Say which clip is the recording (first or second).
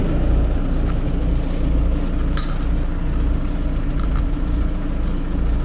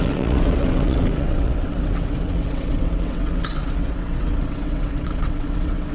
first